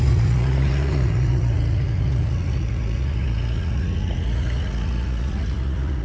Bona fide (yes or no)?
no